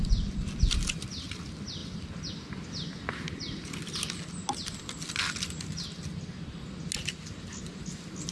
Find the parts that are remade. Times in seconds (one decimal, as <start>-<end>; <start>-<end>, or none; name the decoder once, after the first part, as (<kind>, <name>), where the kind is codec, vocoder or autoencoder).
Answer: none